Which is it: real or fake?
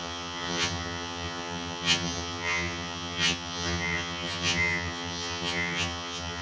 fake